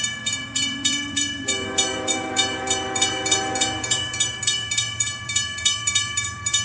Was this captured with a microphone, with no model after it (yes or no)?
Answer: no